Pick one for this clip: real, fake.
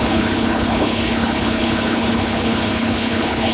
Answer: fake